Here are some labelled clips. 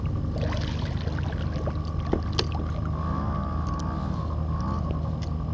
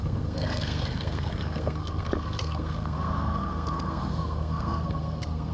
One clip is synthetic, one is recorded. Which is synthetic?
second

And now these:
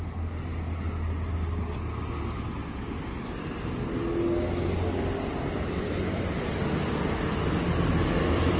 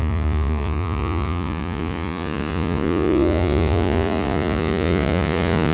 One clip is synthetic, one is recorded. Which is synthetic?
second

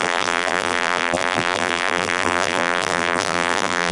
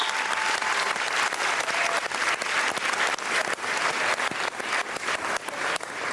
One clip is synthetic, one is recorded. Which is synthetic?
first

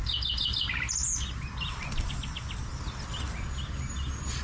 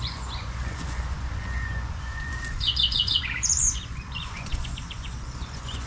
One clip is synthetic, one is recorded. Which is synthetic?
second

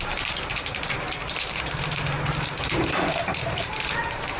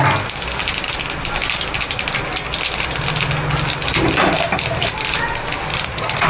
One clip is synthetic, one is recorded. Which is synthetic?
first